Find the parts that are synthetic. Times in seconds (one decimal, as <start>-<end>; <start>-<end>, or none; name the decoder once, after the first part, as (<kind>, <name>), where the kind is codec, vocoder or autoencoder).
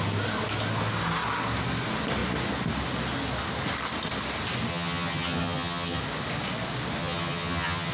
4.7-6.0 (vocoder, HiFi-GAN); 7.0-7.9